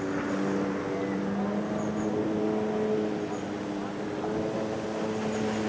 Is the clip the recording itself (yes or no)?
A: yes